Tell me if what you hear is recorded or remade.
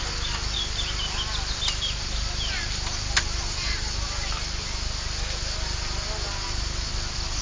recorded